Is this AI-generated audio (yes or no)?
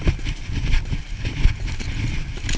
no